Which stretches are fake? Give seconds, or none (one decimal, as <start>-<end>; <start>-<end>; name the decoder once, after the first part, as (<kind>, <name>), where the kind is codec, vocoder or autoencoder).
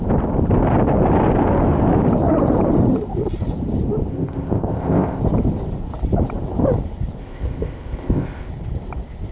4.1-5.2 (codec, ZipCodec); 7.2-8.5